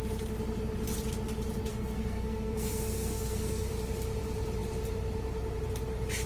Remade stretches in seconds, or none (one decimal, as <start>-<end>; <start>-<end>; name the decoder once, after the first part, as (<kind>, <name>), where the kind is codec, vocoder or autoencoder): 1.7-3.7 (codec, SNAC)